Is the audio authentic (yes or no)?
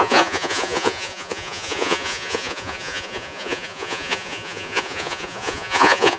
no